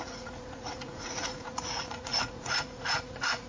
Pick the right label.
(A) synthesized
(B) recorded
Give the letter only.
A